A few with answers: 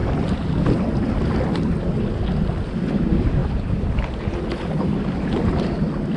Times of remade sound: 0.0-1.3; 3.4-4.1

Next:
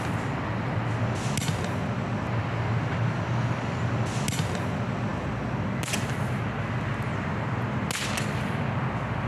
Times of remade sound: none